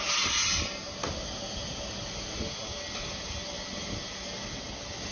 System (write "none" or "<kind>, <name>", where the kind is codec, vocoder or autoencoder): none